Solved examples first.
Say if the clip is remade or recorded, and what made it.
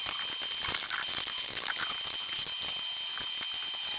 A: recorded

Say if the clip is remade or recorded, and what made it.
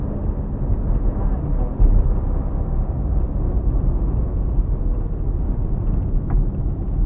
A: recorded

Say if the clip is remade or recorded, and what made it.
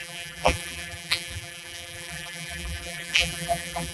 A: remade, vocoder, BigVGAN v2